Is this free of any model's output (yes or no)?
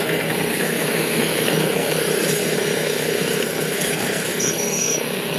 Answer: no